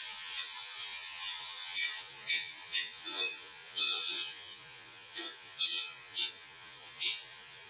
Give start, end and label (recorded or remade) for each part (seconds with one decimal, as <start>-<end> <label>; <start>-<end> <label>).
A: 0.0-7.7 remade